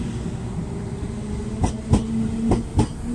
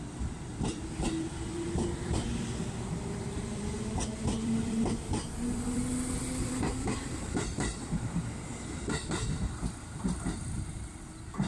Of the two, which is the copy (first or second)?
second